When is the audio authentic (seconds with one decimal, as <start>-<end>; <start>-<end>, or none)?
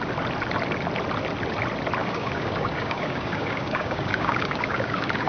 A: 0.0-2.0